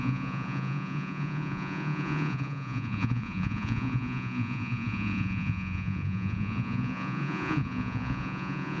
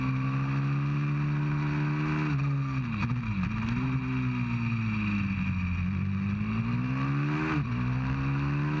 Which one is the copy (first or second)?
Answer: first